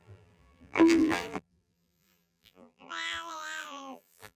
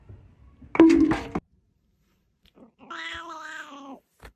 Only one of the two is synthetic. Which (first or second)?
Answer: first